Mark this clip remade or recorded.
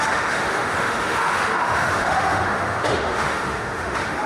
remade